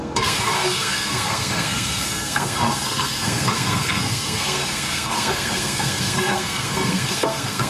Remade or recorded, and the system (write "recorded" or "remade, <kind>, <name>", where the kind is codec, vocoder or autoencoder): remade, codec, SNAC